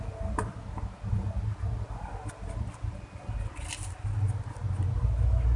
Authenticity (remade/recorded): recorded